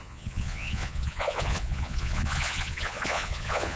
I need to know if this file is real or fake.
fake